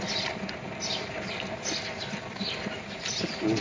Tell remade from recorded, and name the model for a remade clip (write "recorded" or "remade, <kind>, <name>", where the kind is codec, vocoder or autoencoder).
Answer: recorded